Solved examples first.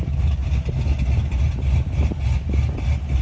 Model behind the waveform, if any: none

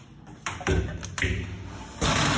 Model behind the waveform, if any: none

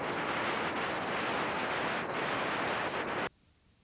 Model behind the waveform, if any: none